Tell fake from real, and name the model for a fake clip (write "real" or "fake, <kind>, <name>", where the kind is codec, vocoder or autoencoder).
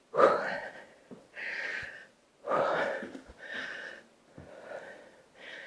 real